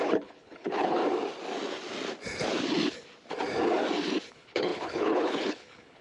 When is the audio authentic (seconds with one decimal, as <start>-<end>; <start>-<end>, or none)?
1.0-4.3